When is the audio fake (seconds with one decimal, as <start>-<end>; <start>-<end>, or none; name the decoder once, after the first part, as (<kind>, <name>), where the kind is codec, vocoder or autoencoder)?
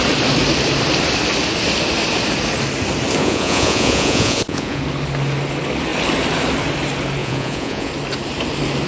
3.2-4.8 (vocoder, Vocos); 7.2-7.9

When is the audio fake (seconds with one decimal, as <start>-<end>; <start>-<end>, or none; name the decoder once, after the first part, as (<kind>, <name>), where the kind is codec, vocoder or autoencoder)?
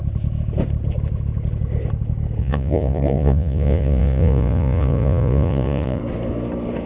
2.4-6.0 (vocoder, Vocos)